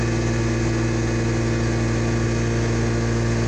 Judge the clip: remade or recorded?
recorded